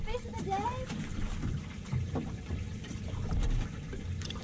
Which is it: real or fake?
real